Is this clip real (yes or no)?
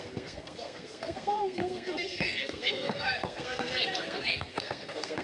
no